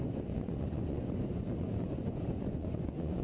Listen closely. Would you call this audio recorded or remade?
remade